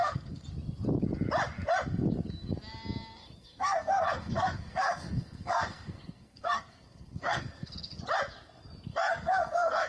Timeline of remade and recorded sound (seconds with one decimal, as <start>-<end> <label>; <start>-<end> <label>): 0.0-0.5 remade; 0.5-3.4 recorded; 3.4-8.0 remade; 8.0-8.9 recorded; 8.9-9.9 remade